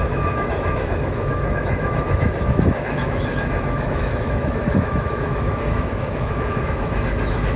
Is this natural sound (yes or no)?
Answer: no